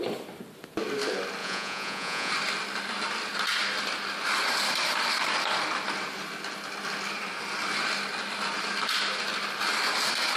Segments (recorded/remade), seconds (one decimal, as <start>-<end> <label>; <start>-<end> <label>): 0.0-1.4 recorded; 1.4-2.3 remade; 2.3-10.4 recorded